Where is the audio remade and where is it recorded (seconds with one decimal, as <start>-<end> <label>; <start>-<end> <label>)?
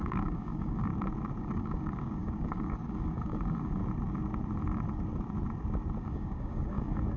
0.0-0.9 remade; 0.9-1.4 recorded; 1.4-3.8 remade; 3.8-6.0 recorded; 6.0-7.2 remade